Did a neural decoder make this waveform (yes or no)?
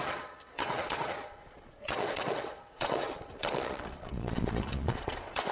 yes